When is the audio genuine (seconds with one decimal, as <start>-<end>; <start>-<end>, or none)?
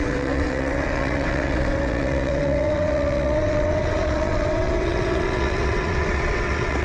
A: none